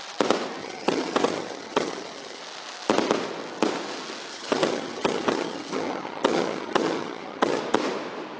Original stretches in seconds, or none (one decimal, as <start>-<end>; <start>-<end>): 0.0-0.6; 2.4-4.3; 7.6-8.4